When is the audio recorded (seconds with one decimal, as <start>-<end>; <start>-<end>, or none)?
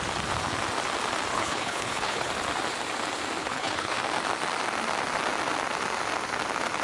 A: 0.0-1.3; 2.3-3.4; 4.0-6.8